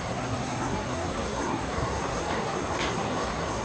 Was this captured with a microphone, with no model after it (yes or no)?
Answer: no